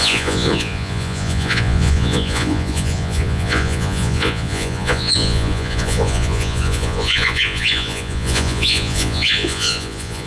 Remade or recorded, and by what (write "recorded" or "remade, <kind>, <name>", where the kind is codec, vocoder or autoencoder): remade, vocoder, Vocos